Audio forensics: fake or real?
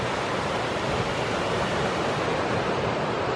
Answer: fake